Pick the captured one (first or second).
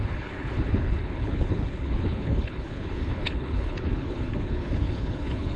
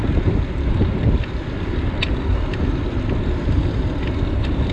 second